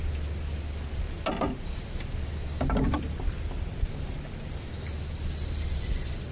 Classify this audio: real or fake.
real